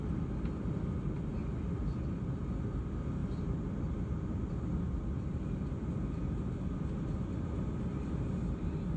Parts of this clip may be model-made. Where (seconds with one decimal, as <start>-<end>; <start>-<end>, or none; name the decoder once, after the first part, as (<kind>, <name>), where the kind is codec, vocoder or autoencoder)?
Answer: none